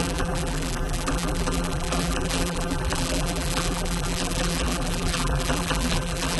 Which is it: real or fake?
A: fake